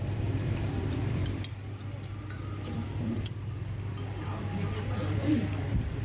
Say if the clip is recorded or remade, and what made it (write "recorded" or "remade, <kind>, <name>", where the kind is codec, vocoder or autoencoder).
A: remade, vocoder, BigVGAN v2